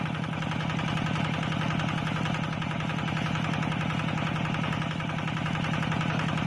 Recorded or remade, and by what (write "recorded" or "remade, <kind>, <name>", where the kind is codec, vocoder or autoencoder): recorded